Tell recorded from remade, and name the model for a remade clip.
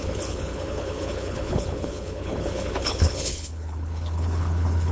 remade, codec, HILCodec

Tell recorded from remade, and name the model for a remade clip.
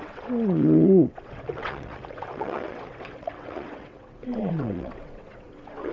remade, vocoder, WaveNeXt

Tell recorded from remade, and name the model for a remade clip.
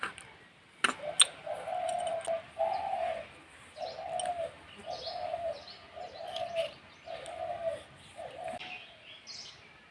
recorded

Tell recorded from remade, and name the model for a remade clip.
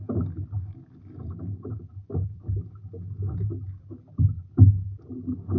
recorded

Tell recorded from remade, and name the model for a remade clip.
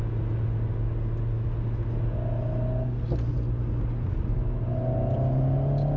recorded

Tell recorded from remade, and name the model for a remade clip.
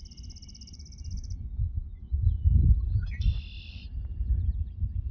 recorded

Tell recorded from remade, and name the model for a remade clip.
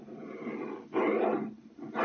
recorded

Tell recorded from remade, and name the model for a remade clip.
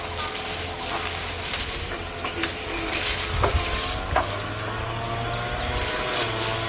recorded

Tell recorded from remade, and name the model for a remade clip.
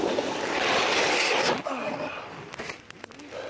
recorded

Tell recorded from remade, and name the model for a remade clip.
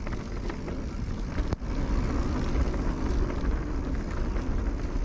recorded